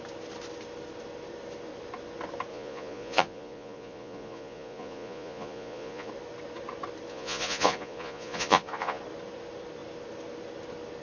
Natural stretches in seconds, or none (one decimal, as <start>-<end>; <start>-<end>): 0.0-2.5; 6.1-7.1; 9.0-11.0